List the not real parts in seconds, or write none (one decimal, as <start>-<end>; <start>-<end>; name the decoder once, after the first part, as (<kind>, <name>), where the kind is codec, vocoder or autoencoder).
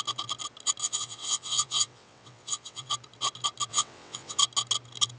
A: 0.8-2.9 (vocoder, WaveNeXt); 3.7-4.4